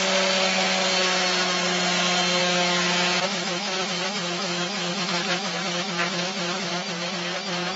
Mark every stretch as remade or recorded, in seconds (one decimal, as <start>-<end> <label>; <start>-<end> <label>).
0.0-2.4 recorded; 2.4-6.7 remade; 6.7-7.8 recorded